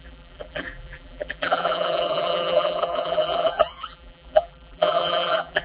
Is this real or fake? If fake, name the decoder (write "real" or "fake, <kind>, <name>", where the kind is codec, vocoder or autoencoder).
fake, vocoder, BigVGAN v2